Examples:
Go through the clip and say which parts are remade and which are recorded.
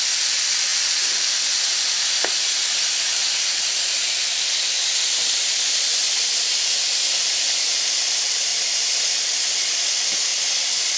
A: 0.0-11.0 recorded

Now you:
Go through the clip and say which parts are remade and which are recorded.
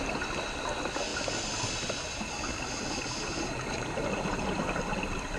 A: 0.0-5.4 recorded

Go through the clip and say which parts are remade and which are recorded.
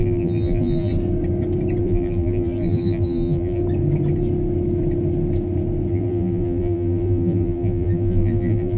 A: 0.0-0.9 remade; 0.9-1.8 recorded; 1.8-3.6 remade; 3.6-5.9 recorded; 5.9-8.8 remade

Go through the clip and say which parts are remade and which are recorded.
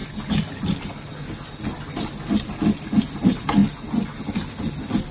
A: 0.0-5.1 recorded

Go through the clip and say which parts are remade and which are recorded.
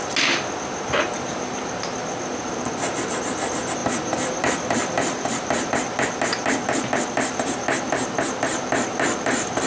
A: 0.0-3.8 recorded; 3.8-5.7 remade; 5.7-9.7 recorded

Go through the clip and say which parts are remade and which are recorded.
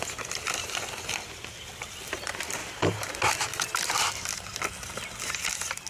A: 0.0-2.6 recorded; 2.6-3.1 remade; 3.1-5.9 recorded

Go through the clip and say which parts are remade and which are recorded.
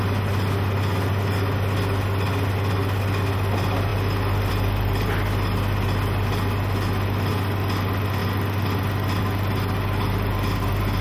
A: 0.0-11.0 recorded